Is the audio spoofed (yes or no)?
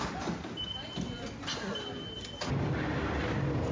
no